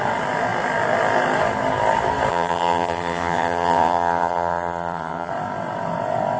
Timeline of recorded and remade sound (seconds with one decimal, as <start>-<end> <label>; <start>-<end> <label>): 0.0-2.3 recorded; 2.3-5.3 remade; 5.3-6.4 recorded